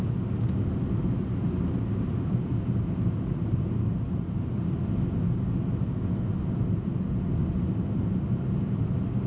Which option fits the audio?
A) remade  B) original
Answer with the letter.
B